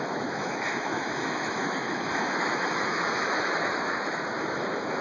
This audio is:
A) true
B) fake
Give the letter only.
B